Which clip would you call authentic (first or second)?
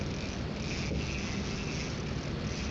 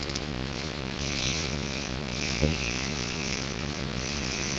first